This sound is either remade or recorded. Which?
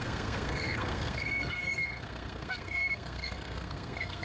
remade